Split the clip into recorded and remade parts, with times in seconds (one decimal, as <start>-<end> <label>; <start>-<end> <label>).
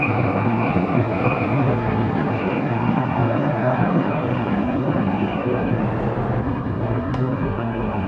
0.0-5.8 remade; 5.8-6.4 recorded; 6.4-8.1 remade